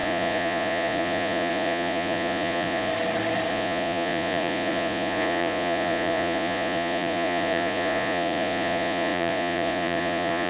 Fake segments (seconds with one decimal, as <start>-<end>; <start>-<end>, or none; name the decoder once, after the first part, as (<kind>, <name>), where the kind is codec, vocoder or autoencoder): 0.0-2.9 (vocoder, Vocos); 3.5-10.5

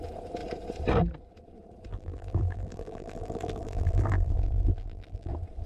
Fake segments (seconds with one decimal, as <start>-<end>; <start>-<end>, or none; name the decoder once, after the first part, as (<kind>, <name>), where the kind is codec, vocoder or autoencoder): 1.9-5.3 (vocoder, BigVGAN v2)

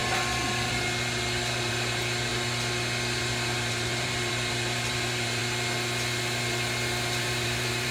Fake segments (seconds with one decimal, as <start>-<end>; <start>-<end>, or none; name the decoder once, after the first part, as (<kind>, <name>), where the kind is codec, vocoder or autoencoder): 1.7-2.3 (vocoder, BigVGAN v2); 3.2-5.4; 7.2-7.9

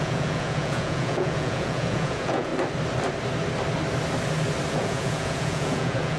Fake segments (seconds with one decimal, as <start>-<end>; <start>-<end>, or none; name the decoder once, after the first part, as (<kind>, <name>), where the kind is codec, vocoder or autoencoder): 0.0-2.5 (vocoder, Vocos); 4.7-6.2

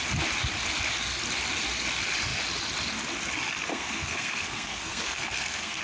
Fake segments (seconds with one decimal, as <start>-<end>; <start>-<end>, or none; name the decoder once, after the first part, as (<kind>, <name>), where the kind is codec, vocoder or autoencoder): 3.7-5.8 (codec, SNAC)

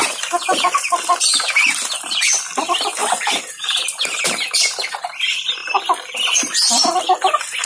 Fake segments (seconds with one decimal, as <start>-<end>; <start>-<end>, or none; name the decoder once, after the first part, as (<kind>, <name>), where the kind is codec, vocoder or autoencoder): 0.0-0.9 (vocoder, BigVGAN v2); 3.0-4.6

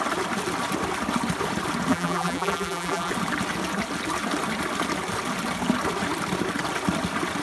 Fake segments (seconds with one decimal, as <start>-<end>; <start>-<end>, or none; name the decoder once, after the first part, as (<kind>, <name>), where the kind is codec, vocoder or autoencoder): 1.9-3.1 (vocoder, BigVGAN v2)

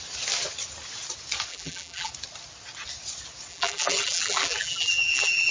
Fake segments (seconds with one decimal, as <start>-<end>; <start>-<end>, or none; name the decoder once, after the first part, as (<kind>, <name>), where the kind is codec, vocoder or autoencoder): 1.5-2.1 (vocoder, BigVGAN v2); 3.5-5.5